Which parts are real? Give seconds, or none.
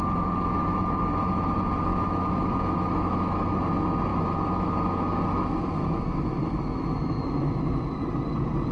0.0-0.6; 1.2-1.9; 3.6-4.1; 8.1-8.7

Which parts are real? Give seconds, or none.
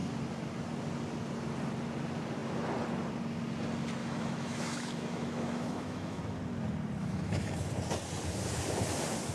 0.0-4.0; 6.2-7.0; 7.7-9.3